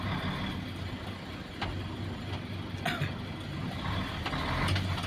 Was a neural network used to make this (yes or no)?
no